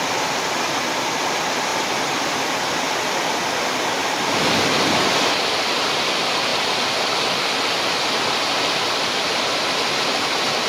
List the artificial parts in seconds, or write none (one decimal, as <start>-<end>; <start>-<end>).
1.7-2.2